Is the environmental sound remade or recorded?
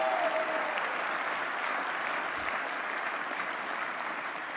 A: recorded